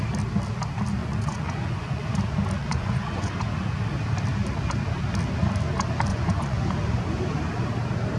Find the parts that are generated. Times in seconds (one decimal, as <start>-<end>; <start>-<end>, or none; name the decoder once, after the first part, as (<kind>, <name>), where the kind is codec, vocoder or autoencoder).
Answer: 1.0-2.2 (vocoder, Vocos); 2.6-3.3; 6.1-6.7